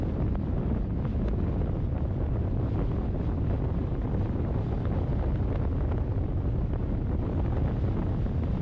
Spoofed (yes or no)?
no